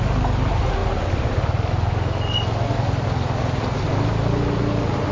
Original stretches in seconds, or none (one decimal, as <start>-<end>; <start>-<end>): 0.0-5.1